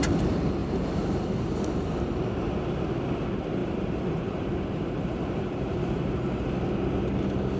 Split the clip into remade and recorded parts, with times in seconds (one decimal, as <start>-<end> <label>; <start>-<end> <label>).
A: 0.0-0.6 recorded; 0.6-1.2 remade; 1.2-3.6 recorded; 3.6-6.5 remade; 6.5-7.6 recorded